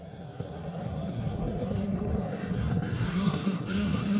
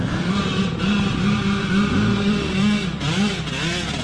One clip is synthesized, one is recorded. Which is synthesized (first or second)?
first